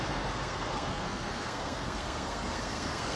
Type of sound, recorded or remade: remade